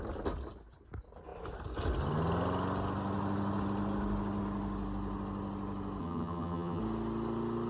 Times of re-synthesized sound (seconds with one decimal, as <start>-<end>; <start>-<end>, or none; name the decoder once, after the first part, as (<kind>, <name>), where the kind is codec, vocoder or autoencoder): 6.0-6.8 (vocoder, HiFi-GAN)